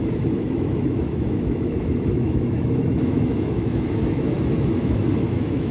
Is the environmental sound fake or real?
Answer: fake